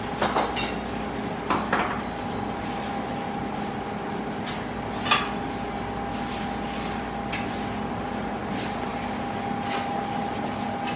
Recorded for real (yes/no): yes